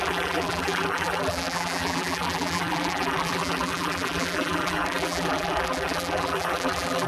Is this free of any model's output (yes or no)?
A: no